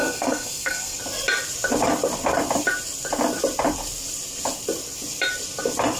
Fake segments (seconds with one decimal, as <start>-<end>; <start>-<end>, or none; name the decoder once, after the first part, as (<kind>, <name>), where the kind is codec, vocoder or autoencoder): 0.0-1.0 (codec, SNAC)